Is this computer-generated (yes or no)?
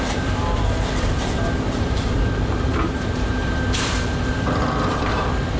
yes